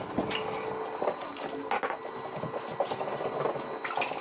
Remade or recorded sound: recorded